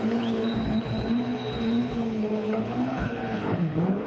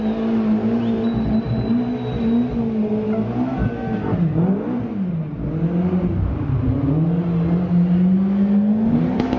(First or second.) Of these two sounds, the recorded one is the second